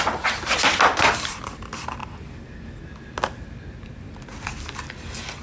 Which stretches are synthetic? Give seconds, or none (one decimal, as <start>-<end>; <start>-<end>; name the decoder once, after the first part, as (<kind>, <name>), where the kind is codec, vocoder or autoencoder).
none